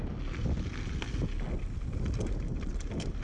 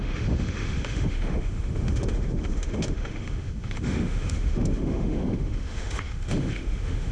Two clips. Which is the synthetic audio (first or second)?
second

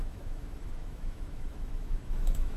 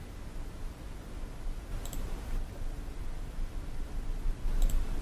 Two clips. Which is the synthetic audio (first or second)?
first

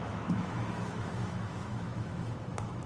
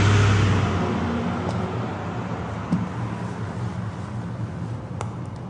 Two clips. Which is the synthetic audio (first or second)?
first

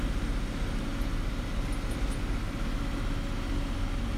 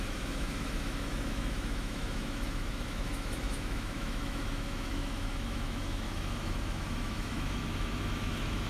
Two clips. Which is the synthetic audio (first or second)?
second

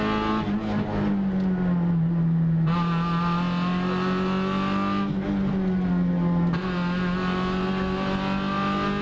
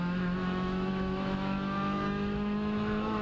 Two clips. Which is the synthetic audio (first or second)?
second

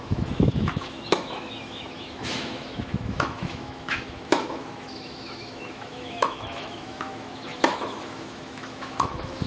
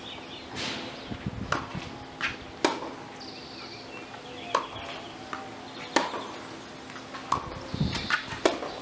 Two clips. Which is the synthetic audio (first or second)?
first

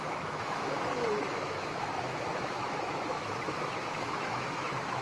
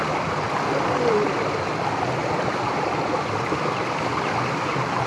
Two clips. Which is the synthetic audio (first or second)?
first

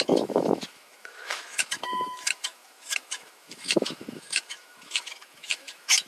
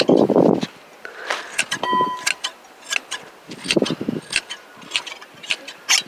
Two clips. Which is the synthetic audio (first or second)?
first